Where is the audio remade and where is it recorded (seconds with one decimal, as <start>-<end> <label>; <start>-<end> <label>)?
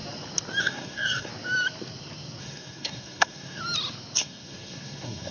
0.0-0.6 recorded; 0.6-1.3 remade; 1.3-2.4 recorded; 2.4-3.6 remade; 3.6-4.2 recorded; 4.2-5.3 remade